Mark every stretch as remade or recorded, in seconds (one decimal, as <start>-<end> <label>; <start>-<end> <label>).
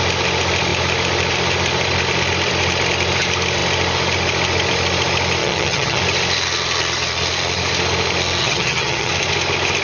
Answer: 0.0-5.4 recorded; 5.4-6.0 remade; 6.0-8.4 recorded; 8.4-9.1 remade; 9.1-9.8 recorded